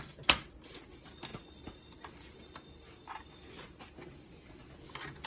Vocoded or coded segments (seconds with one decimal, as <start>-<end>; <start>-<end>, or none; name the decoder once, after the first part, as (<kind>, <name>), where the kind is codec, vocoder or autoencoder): none